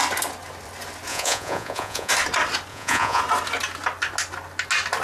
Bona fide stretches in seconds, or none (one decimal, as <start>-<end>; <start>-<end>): 0.0-1.1; 2.1-2.7; 3.2-5.0